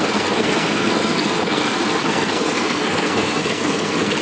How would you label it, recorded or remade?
remade